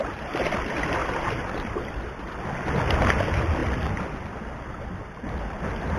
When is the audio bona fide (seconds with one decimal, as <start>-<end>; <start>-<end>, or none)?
0.0-1.0; 2.3-6.0